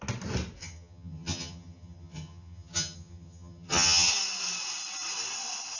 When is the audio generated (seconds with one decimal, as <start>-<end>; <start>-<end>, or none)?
0.6-4.1